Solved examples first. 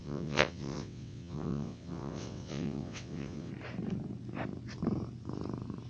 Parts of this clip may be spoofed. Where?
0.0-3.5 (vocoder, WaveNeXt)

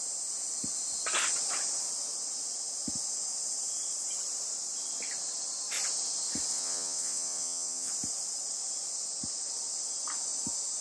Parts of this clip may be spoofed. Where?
6.5-7.9 (vocoder, WaveNeXt)

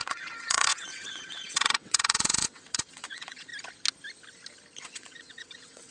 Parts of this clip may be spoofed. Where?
0.0-3.5 (vocoder, WaveNeXt); 4.8-5.9

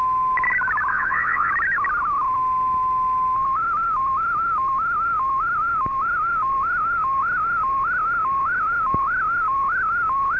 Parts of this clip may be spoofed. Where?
0.9-1.5 (vocoder, WaveNeXt)